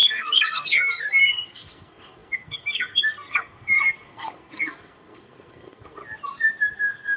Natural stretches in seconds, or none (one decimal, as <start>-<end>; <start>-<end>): 6.0-6.7